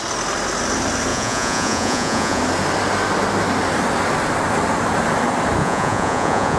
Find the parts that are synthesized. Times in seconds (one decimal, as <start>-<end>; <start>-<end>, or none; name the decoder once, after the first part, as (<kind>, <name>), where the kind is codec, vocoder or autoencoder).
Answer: 1.1-2.4 (vocoder, Vocos); 5.6-6.6